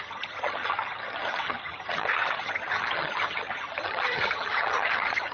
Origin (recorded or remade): remade